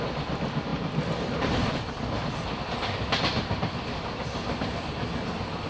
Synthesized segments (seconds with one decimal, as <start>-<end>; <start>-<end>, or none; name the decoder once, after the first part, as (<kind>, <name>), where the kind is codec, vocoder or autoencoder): 0.7-2.6 (vocoder, BigVGAN v2); 3.3-4.2